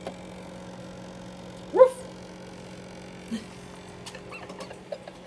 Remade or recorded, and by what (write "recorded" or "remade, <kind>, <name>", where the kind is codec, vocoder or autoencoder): recorded